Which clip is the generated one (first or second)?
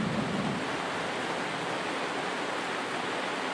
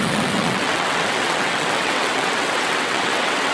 second